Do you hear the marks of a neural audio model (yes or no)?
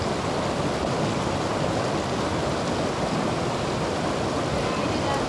no